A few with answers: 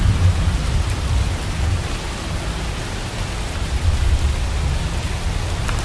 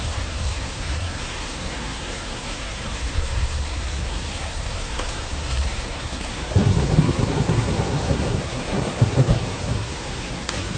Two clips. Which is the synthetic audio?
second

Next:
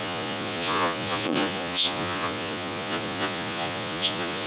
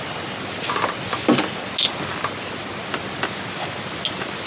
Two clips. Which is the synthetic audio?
first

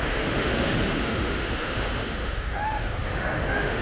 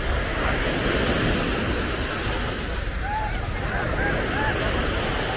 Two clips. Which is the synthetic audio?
first